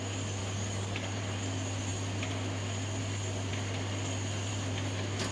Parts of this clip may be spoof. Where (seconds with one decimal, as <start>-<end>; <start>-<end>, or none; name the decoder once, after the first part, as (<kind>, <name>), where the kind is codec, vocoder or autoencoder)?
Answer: 0.4-1.2 (codec, DAC)